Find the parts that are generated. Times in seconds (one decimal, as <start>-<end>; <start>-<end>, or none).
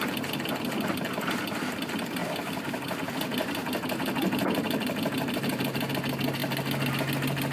2.2-3.1; 3.6-5.9